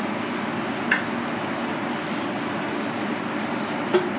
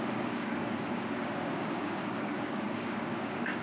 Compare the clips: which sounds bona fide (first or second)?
first